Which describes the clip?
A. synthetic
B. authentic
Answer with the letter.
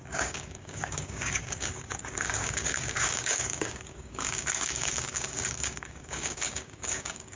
A